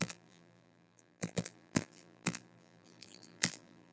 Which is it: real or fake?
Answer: fake